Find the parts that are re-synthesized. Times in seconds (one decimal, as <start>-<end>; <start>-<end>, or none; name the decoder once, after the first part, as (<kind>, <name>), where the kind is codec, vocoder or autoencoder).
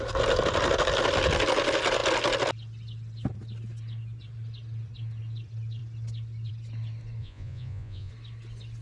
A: 7.2-8.1 (vocoder, Vocos)